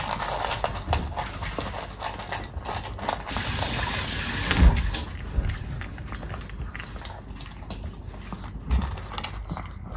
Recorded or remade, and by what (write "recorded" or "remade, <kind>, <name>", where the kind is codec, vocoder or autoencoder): recorded